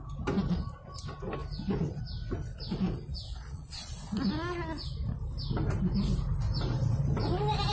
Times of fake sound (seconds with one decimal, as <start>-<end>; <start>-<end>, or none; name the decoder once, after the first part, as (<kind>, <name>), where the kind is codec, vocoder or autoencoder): 3.3-3.9 (vocoder, Vocos)